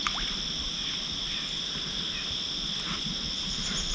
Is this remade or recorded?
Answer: recorded